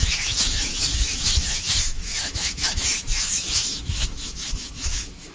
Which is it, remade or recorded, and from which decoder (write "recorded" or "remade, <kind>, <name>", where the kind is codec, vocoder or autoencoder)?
remade, autoencoder, DAC-VAE